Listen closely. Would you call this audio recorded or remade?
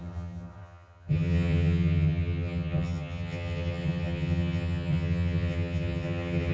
remade